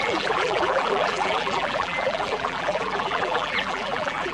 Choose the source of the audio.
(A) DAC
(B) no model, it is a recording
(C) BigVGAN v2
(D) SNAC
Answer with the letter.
C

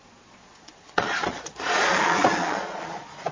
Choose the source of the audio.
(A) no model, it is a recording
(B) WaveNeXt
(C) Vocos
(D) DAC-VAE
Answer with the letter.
C